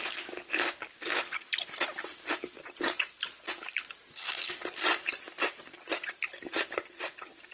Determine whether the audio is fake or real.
real